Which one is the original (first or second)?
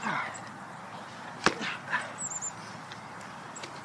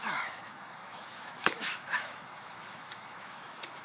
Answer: first